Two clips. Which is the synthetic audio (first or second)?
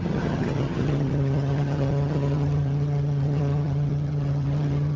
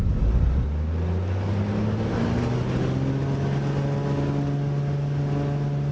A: first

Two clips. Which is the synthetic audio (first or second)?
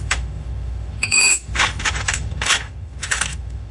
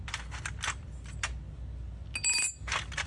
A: first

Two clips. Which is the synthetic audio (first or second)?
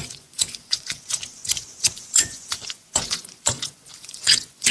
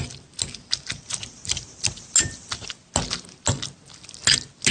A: first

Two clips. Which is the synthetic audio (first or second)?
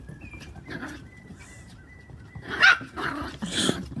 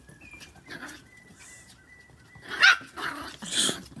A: first